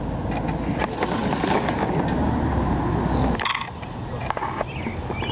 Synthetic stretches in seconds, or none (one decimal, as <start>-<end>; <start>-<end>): none